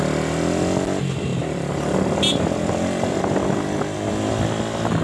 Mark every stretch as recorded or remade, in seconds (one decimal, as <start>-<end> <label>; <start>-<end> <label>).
0.0-5.0 recorded